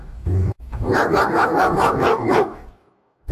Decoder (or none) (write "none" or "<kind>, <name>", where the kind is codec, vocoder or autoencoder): codec, DAC